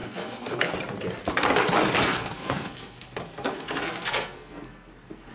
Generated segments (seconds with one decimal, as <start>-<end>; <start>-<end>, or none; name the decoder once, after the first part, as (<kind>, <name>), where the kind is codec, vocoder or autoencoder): 0.0-0.7 (codec, SNAC); 2.0-5.3